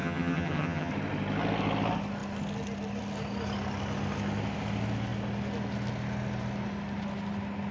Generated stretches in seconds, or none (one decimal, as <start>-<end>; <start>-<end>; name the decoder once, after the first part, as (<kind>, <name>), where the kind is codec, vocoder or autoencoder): 0.0-0.9 (vocoder, HiFi-GAN)